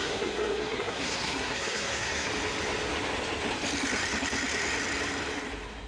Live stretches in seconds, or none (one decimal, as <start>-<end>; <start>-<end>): 2.3-5.9